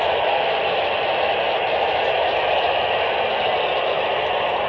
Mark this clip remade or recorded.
recorded